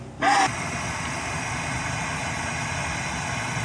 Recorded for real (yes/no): yes